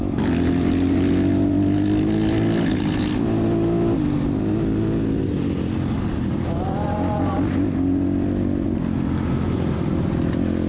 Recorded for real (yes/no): yes